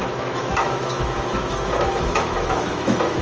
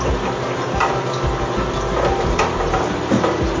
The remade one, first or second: first